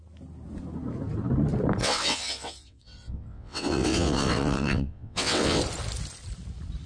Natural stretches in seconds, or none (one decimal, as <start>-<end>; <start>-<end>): 0.0-1.8; 5.6-6.9